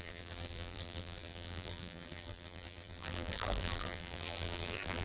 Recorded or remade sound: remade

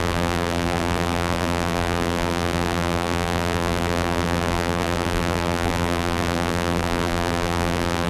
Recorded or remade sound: remade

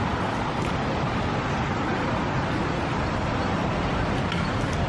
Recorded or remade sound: recorded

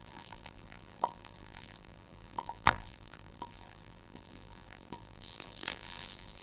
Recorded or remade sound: remade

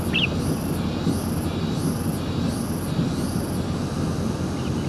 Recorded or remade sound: recorded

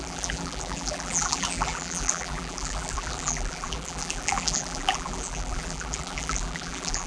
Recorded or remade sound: remade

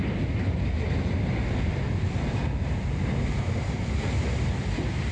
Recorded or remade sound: recorded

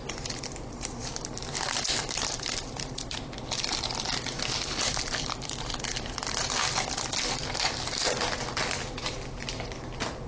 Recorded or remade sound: remade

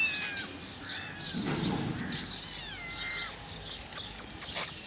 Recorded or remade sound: recorded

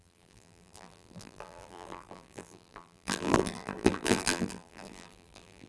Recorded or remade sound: remade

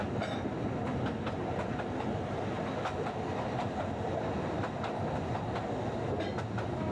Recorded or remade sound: recorded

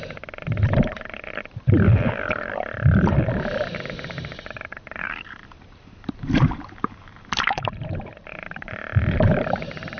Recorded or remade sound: remade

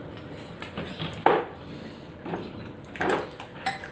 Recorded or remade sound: remade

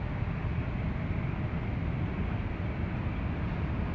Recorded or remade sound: recorded